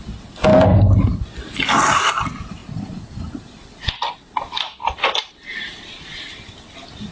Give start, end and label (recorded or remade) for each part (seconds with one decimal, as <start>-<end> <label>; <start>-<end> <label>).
0.0-7.1 recorded